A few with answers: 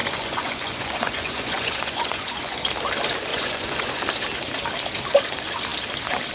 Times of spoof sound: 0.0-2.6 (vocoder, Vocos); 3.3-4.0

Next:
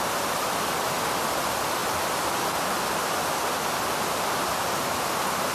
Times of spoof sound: none

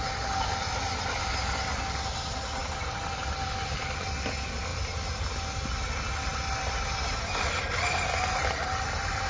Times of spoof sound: none